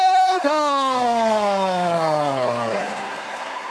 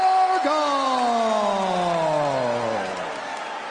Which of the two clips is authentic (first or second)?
second